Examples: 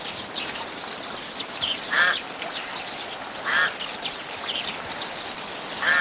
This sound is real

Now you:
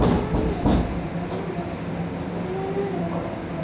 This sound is real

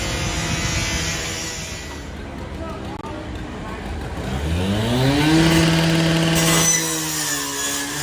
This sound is real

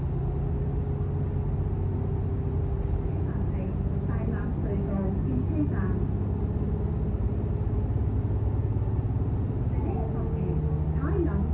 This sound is real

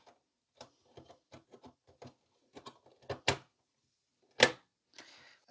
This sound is real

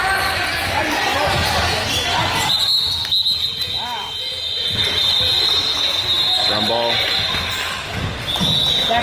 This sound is real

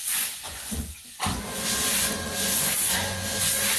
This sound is fake